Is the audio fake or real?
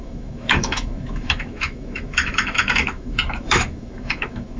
fake